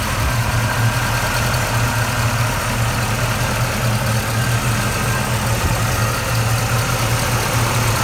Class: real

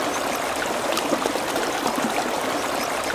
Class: real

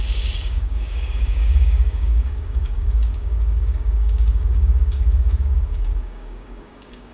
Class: fake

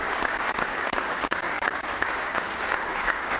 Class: fake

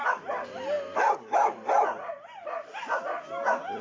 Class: real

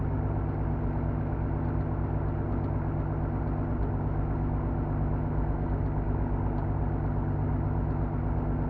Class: real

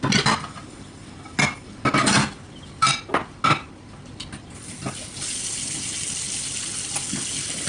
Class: real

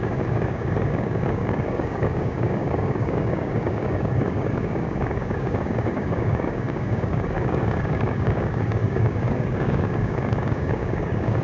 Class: fake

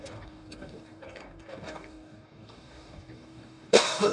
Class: fake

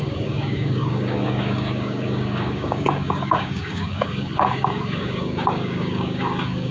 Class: fake